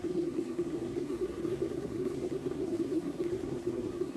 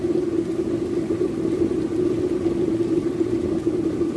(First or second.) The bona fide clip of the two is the second